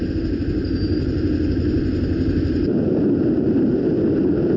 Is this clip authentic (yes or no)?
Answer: yes